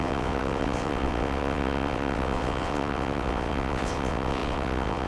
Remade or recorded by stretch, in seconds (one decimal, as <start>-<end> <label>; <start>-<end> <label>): 0.0-5.1 remade